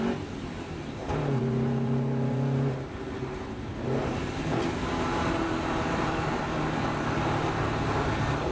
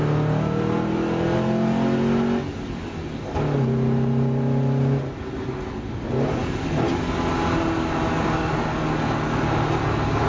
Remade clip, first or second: first